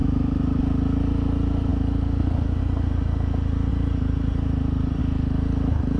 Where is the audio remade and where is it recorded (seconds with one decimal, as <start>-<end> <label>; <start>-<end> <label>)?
0.0-0.6 remade; 0.6-3.7 recorded; 3.7-5.0 remade; 5.0-6.0 recorded